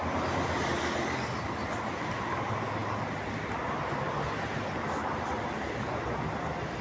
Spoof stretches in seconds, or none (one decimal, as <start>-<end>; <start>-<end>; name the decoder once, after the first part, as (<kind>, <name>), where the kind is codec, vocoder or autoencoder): none